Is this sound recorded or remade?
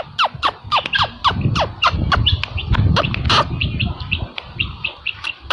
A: recorded